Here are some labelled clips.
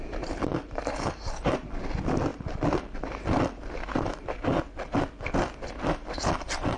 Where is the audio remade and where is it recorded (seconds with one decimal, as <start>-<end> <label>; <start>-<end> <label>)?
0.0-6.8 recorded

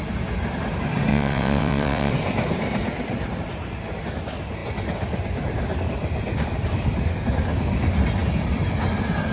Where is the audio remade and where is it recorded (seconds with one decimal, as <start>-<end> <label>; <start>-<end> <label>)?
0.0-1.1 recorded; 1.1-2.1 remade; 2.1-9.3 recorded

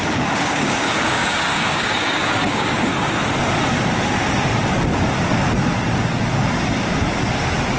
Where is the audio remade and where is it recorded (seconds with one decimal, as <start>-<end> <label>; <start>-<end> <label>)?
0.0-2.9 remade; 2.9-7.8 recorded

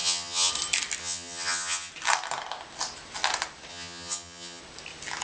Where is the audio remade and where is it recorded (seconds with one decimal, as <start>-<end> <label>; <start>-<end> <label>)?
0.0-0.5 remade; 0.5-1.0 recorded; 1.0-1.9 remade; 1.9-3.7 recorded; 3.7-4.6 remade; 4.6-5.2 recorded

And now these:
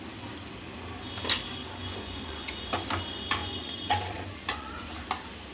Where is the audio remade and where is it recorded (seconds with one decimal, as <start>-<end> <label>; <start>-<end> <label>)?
0.0-1.6 recorded; 1.6-2.7 remade; 2.7-3.4 recorded; 3.4-5.0 remade; 5.0-5.5 recorded

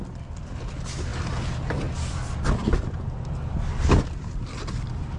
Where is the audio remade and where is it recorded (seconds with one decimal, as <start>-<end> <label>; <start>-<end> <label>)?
0.0-5.2 recorded

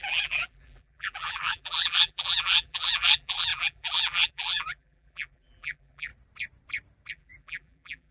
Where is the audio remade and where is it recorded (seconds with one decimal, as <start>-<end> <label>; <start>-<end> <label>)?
0.0-6.1 remade; 6.1-7.1 recorded; 7.1-8.1 remade